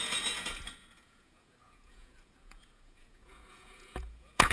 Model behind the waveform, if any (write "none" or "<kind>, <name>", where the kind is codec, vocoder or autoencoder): vocoder, Vocos